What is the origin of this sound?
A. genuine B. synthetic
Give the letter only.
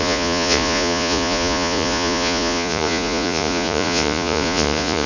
B